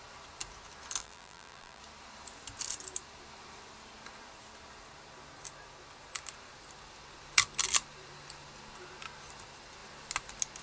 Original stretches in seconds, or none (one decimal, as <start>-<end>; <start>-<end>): 0.0-1.0; 1.8-10.6